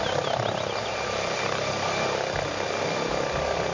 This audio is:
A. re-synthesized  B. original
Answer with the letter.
A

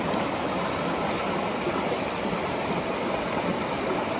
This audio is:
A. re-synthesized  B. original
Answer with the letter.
B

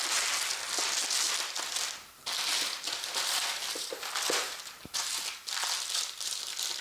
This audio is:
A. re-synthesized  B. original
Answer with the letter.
B